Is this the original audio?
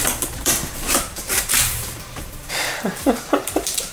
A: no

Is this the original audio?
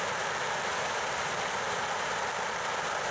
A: yes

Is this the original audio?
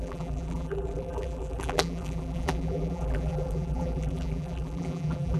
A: no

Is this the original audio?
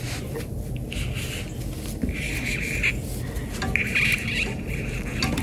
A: yes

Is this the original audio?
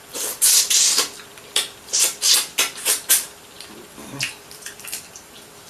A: no